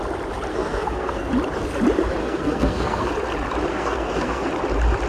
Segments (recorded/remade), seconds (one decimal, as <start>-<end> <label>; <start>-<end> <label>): 0.0-0.5 recorded; 0.5-1.3 remade; 1.3-2.2 recorded; 2.2-3.1 remade; 3.1-3.7 recorded; 3.7-4.5 remade; 4.5-5.1 recorded